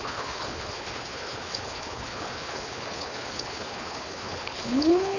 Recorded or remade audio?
remade